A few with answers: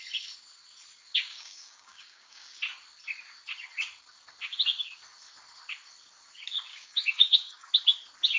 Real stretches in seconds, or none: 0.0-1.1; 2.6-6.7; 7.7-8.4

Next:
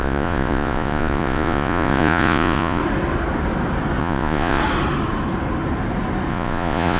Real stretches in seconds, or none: 2.8-4.0; 4.6-6.3

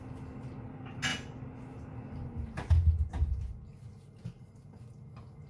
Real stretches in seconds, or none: 0.0-5.5

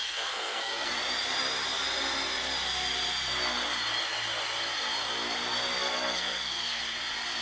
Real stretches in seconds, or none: 0.9-5.8; 6.8-7.4

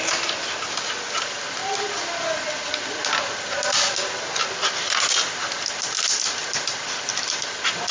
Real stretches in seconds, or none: 0.0-1.6; 2.4-6.4; 7.4-7.9

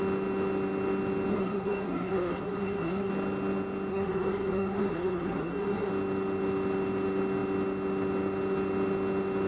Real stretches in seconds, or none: 0.0-1.3; 3.1-3.9; 5.9-9.5

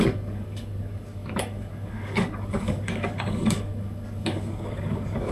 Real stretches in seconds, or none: none